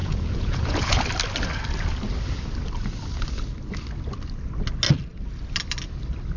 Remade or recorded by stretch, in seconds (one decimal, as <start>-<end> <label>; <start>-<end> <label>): 0.0-1.0 remade; 1.0-6.4 recorded